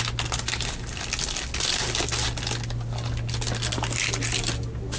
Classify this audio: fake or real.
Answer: real